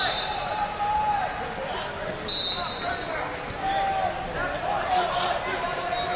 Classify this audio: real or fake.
real